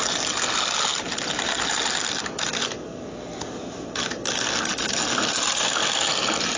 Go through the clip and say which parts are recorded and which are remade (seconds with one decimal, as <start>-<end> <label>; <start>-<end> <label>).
0.0-6.6 recorded